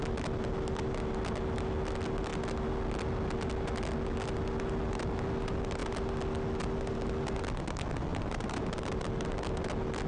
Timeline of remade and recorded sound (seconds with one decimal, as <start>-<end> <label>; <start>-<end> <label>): 0.0-8.1 recorded; 8.1-8.9 remade; 8.9-10.1 recorded